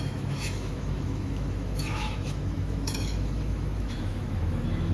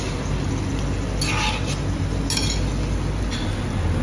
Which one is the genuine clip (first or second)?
second